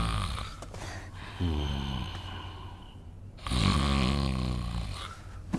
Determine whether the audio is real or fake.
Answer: real